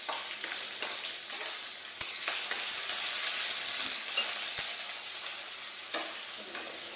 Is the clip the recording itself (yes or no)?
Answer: yes